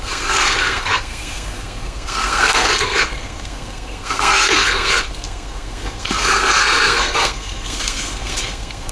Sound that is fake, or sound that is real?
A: fake